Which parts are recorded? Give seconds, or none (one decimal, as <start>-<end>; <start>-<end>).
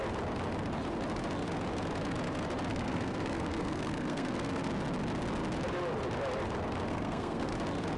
0.0-2.7; 4.7-6.9; 7.5-8.0